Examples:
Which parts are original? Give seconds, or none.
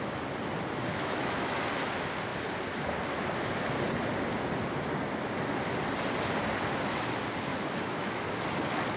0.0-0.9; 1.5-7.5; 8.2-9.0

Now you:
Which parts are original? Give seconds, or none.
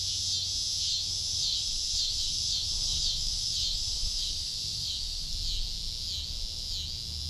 0.0-0.9; 5.3-7.3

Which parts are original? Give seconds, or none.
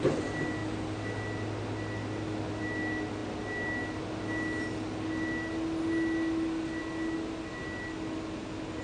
0.0-8.8